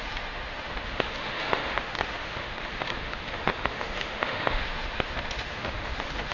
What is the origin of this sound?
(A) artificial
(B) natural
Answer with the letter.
A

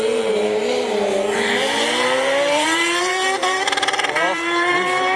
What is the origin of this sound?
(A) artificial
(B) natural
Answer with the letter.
A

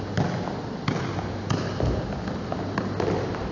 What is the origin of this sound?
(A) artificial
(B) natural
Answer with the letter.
B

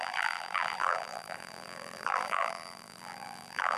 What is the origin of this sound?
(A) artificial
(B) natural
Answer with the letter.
A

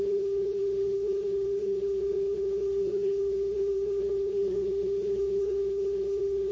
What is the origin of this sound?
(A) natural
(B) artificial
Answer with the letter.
B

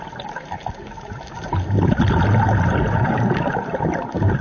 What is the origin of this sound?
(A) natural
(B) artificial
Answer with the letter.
B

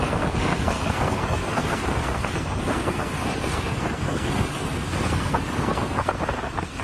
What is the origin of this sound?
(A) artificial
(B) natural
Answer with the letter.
A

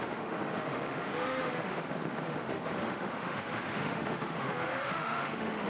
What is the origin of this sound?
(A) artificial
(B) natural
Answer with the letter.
A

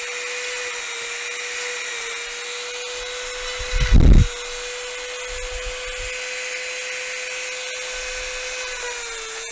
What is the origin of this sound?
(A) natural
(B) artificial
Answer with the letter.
A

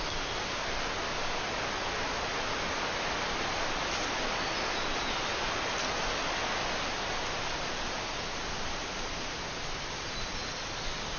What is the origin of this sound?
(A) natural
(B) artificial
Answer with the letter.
A